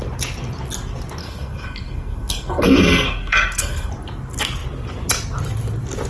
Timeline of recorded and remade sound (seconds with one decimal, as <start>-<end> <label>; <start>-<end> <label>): 0.0-1.2 recorded; 1.2-3.9 remade; 3.9-6.1 recorded

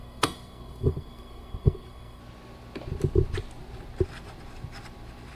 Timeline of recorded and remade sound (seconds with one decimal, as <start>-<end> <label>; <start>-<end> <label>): 0.0-2.2 remade; 2.2-5.4 recorded

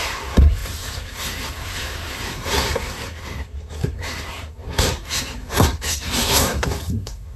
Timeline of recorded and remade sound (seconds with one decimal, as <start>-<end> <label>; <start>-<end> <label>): 0.0-7.4 remade

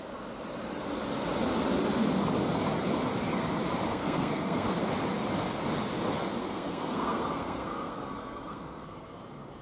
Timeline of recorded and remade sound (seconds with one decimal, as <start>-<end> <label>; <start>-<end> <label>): 0.0-3.9 recorded; 3.9-4.8 remade; 4.8-6.4 recorded; 6.4-9.2 remade; 9.2-9.6 recorded

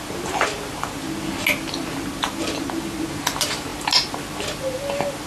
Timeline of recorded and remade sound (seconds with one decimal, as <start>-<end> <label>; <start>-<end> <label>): 0.0-5.3 recorded

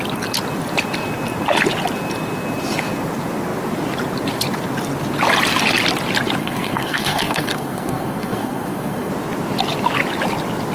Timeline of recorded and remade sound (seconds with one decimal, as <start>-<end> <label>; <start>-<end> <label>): 0.0-6.4 recorded; 6.4-9.1 remade; 9.1-10.7 recorded

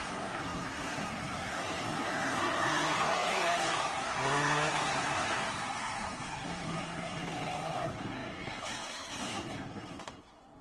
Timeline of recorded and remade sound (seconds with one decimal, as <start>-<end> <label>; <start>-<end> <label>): 0.0-10.6 remade